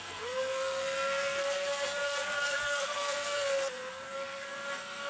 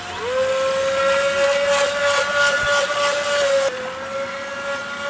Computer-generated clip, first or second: first